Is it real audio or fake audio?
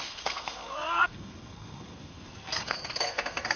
fake